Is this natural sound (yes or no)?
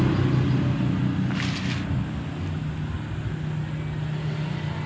yes